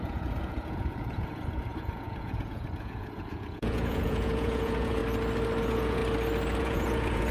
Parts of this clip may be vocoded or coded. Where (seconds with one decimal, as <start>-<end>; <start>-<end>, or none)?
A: 0.0-5.0; 5.6-6.0; 6.6-7.3